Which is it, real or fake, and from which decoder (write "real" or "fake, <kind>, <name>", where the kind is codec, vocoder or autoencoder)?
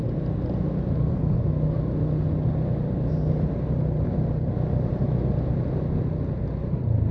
real